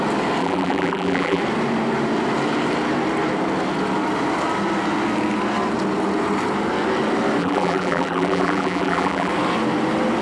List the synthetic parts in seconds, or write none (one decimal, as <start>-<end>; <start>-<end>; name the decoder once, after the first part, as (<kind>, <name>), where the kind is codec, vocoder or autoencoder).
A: 0.4-1.4 (vocoder, BigVGAN v2); 7.4-9.3